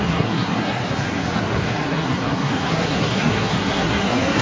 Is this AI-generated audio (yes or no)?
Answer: yes